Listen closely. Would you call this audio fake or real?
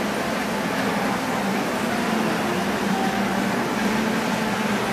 real